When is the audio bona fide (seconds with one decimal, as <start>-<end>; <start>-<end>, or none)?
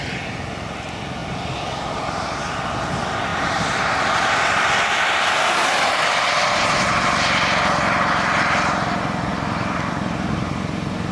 0.0-3.3; 5.3-9.3; 9.9-11.1